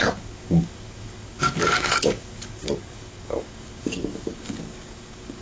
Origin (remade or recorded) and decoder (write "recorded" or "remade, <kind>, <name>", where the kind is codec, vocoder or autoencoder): remade, codec, DAC